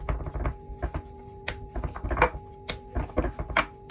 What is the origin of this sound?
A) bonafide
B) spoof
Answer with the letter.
A